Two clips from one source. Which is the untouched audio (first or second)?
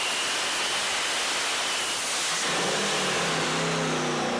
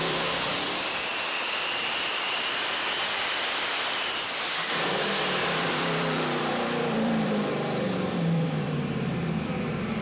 first